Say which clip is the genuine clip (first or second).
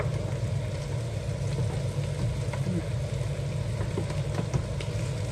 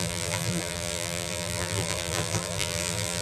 first